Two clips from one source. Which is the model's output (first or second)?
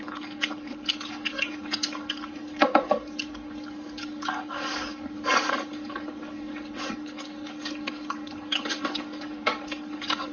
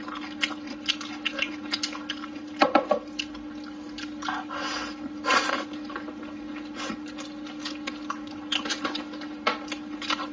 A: first